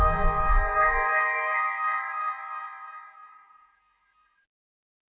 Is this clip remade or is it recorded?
recorded